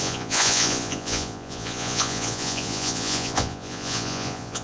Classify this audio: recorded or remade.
remade